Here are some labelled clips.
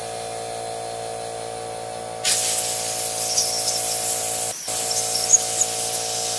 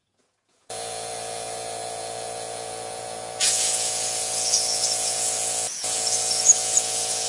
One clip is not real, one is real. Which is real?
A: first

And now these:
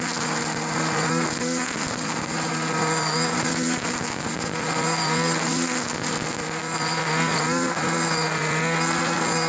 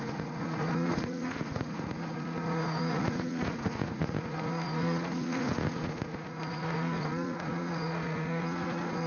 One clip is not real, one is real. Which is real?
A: first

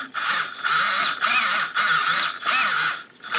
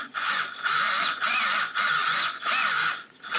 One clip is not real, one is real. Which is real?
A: first